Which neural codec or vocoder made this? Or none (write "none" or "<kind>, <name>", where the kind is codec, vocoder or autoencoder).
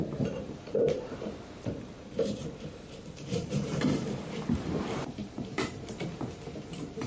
vocoder, BigVGAN v2